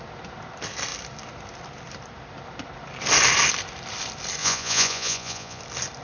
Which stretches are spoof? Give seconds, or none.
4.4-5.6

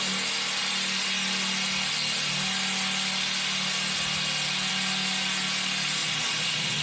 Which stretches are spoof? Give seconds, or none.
6.0-6.8

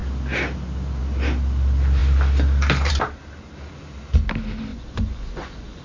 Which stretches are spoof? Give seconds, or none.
4.7-5.8

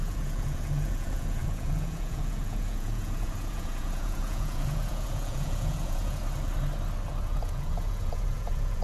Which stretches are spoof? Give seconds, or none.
0.0-6.2; 7.2-8.8

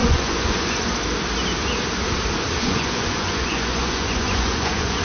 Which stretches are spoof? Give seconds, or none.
0.0-0.8; 2.6-5.0

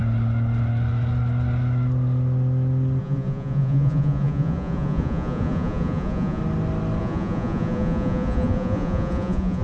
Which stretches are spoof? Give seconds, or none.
3.0-6.4; 7.0-9.6

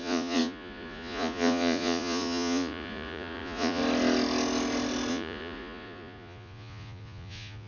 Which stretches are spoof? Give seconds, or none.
0.0-3.8; 5.1-7.7